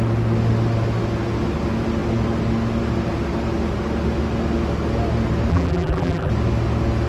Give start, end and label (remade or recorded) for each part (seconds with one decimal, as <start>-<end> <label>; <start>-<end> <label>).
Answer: 0.0-5.5 recorded; 5.5-6.3 remade; 6.3-7.1 recorded